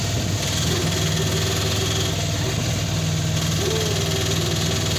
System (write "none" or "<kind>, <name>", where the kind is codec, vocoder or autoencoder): none